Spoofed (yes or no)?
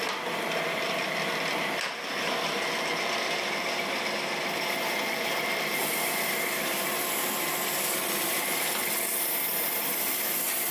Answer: yes